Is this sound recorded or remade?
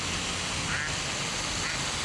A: recorded